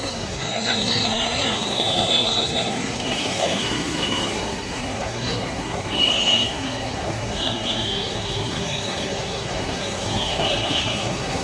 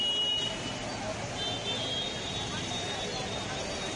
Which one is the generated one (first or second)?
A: first